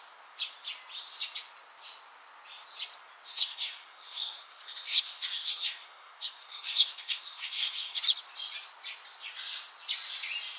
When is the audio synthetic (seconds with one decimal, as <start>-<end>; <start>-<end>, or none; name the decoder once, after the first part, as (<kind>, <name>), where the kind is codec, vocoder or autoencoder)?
3.3-8.0 (codec, SNAC)